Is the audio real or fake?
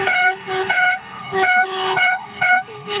fake